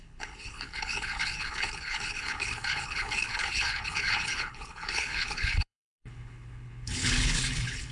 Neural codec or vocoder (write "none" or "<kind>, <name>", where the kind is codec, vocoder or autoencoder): codec, HILCodec